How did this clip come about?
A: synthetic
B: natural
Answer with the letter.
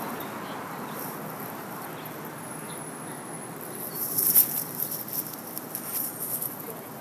B